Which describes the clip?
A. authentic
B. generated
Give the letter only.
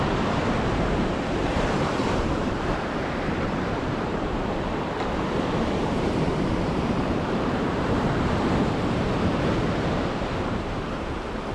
B